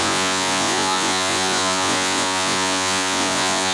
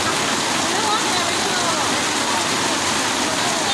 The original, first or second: second